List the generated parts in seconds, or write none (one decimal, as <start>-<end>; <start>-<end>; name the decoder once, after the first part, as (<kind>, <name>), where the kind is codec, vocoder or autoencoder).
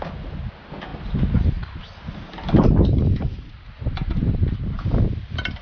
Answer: none